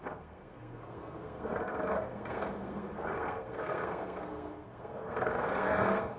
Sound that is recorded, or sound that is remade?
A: remade